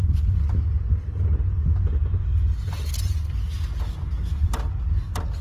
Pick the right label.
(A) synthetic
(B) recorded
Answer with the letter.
B